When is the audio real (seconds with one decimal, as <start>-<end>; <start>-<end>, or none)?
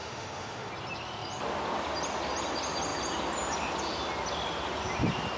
0.7-5.4